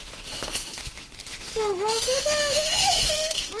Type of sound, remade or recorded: remade